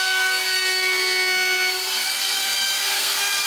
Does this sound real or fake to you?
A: fake